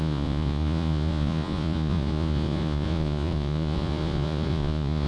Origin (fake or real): fake